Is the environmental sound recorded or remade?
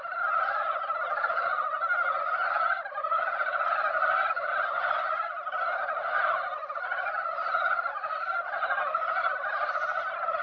recorded